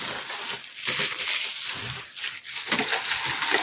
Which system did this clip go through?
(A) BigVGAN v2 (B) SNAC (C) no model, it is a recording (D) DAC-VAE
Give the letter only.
C